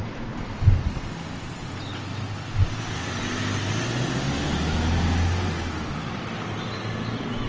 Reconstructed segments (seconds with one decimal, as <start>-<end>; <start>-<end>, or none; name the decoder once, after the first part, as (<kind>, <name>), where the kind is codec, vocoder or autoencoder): none